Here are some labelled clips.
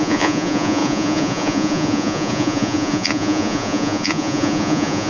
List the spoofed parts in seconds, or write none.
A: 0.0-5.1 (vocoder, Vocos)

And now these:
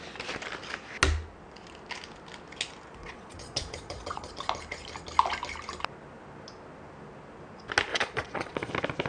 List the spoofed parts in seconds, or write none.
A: 3.0-4.3 (vocoder, Vocos); 7.9-8.7

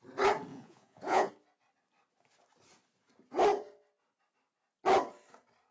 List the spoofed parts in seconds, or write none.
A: 0.5-1.3 (vocoder, Vocos)

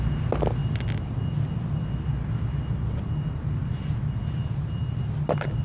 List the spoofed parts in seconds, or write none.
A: none